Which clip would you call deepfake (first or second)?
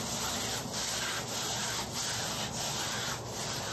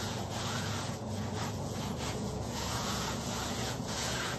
second